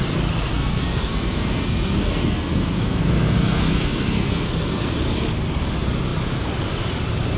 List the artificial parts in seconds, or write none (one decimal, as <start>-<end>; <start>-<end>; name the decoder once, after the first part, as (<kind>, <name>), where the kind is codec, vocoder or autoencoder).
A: 0.5-4.9 (codec, SNAC)